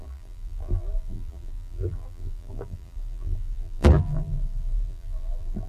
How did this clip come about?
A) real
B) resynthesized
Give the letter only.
B